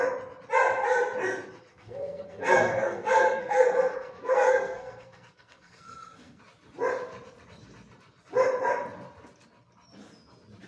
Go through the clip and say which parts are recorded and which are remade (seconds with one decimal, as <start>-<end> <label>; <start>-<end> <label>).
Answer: 0.0-1.7 recorded; 1.7-6.4 remade; 6.4-10.7 recorded